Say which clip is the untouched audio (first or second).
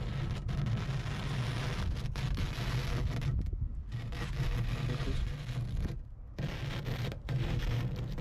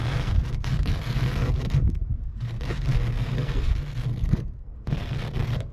first